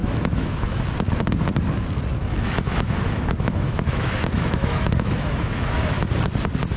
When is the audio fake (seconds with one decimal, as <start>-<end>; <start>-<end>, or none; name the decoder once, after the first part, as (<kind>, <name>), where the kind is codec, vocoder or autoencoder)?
0.0-0.8 (autoencoder, DAC-VAE); 2.2-6.0